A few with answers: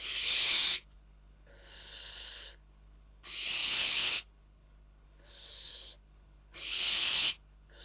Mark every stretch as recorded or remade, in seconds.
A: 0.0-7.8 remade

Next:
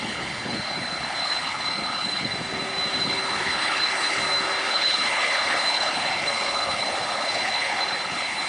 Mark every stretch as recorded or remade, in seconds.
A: 0.0-2.3 remade; 2.3-3.0 recorded; 3.0-4.2 remade; 4.2-4.7 recorded; 4.7-8.5 remade

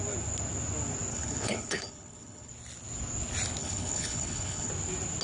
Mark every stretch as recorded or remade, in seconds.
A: 0.0-1.1 recorded; 1.1-2.5 remade; 2.5-3.6 recorded; 3.6-4.7 remade; 4.7-5.2 recorded

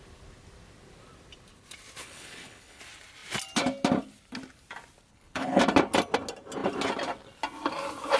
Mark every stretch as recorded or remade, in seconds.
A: 0.0-2.0 recorded; 2.0-2.8 remade; 2.8-5.1 recorded; 5.1-5.6 remade; 5.6-8.2 recorded

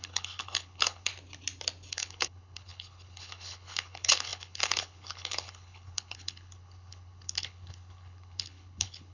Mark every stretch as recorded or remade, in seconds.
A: 0.0-1.1 remade; 1.1-1.9 recorded; 1.9-9.1 remade